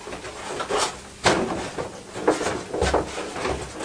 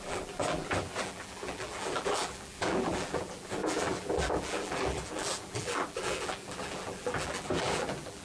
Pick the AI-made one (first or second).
second